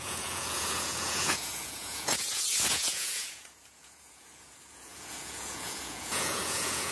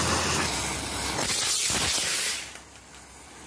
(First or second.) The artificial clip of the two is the first